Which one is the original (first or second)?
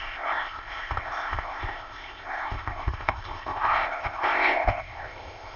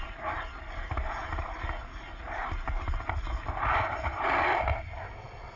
second